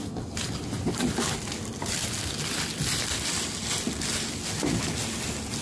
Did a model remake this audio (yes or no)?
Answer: no